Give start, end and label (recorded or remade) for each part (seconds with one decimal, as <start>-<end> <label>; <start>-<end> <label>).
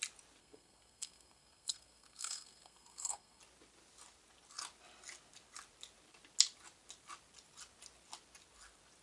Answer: 0.0-0.4 recorded; 0.4-3.4 remade; 3.4-9.0 recorded